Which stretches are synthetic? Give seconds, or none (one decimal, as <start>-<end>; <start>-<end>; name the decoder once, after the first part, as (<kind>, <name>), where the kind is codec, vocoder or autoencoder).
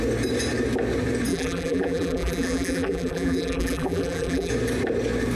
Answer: 1.3-4.5 (vocoder, BigVGAN v2)